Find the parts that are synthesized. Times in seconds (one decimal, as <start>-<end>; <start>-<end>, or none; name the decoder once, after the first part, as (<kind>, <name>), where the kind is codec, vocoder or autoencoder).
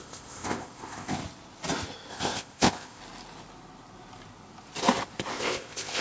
0.0-1.2 (codec, ZipCodec); 2.1-3.0; 5.3-6.0